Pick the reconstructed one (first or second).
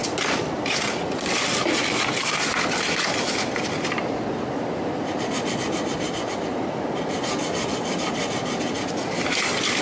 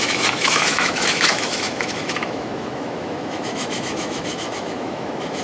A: second